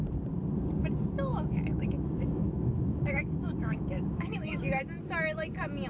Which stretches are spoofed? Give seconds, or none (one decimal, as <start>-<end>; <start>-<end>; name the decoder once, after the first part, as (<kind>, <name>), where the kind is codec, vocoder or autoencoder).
1.3-4.8 (autoencoder, DAC-VAE)